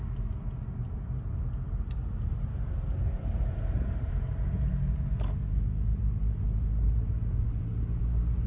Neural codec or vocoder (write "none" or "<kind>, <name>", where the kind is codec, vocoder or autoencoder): none